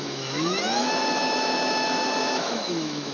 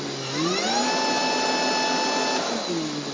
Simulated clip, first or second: first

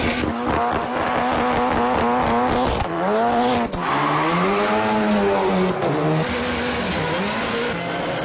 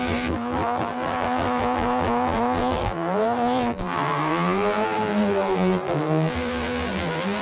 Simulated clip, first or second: second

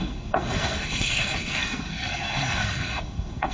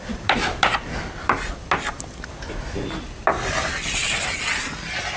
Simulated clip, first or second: first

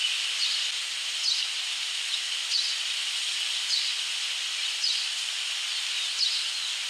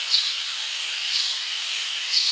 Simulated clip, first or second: second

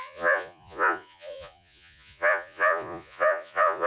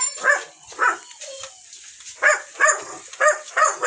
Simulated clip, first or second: first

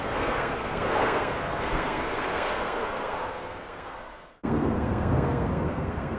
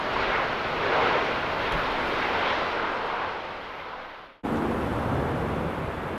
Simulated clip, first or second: first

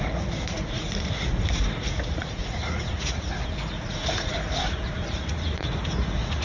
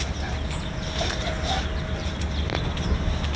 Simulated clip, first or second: first